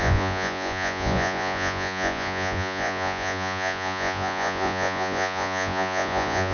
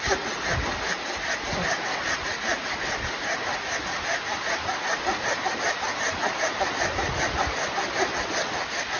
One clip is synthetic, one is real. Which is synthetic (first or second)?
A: first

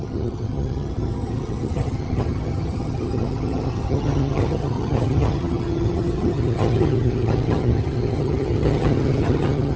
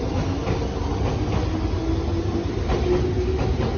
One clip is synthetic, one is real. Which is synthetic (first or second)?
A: first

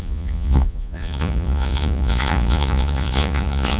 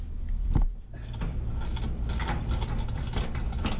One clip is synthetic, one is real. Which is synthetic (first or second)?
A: first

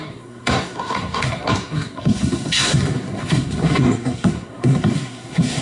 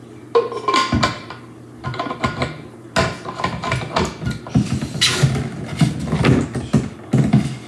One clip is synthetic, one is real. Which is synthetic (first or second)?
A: first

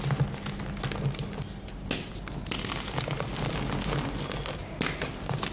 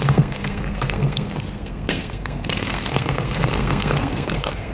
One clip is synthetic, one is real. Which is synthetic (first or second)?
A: second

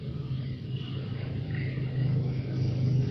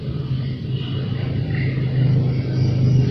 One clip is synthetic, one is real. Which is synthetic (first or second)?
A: first